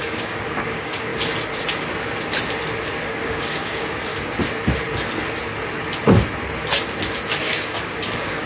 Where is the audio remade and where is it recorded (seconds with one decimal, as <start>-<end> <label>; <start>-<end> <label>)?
0.0-1.1 remade; 1.1-3.1 recorded; 3.1-4.1 remade; 4.1-7.4 recorded; 7.4-8.5 remade